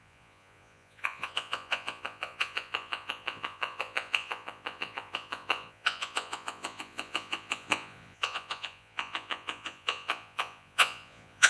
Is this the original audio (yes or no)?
no